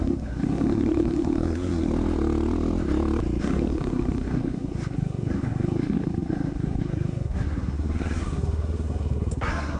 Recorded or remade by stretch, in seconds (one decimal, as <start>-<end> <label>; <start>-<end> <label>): 0.0-1.9 remade; 1.9-3.4 recorded; 3.4-9.8 remade